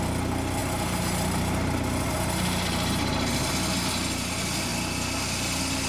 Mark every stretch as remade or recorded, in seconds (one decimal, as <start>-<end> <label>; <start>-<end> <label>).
0.0-0.6 recorded; 0.6-3.5 remade; 3.5-5.9 recorded